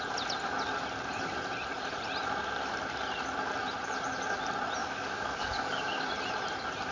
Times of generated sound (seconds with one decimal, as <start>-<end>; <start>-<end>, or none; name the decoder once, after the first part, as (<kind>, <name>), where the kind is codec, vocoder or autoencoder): 4.8-6.1 (codec, DAC)